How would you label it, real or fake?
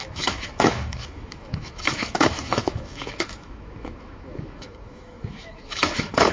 fake